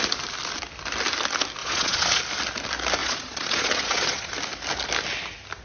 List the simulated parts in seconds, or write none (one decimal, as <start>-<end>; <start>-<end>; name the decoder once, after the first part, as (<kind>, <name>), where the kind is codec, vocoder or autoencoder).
1.6-2.2 (vocoder, Vocos); 3.0-4.3